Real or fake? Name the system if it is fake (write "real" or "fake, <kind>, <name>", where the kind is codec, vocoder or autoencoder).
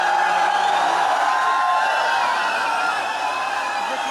real